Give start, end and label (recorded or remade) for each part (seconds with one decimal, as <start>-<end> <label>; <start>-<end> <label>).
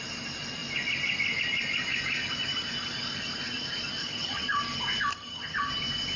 0.0-4.0 recorded; 4.0-4.6 remade; 4.6-5.1 recorded; 5.1-5.7 remade; 5.7-6.2 recorded